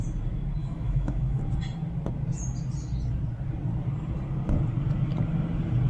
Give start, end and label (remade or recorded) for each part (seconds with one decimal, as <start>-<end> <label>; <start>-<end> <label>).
0.0-0.6 recorded; 0.6-1.4 remade; 1.4-5.9 recorded